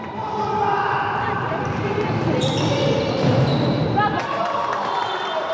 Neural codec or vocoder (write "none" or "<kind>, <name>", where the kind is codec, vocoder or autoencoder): none